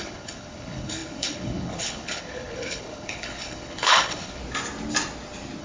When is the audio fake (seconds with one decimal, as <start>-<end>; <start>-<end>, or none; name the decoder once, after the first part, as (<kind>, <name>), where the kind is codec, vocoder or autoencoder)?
0.0-4.4 (codec, HILCodec)